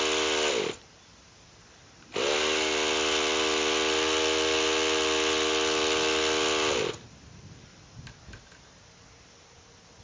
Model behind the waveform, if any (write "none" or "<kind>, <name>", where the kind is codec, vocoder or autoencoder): none